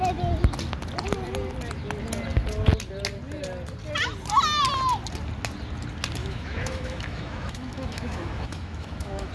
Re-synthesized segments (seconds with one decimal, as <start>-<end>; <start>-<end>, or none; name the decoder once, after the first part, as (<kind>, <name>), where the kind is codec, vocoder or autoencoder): 6.2-9.3 (autoencoder, DAC-VAE)